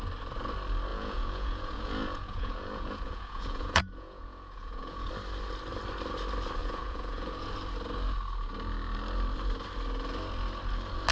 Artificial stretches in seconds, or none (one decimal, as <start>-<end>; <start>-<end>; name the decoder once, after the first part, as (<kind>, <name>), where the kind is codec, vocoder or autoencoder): 0.9-5.1 (vocoder, Vocos); 6.6-7.5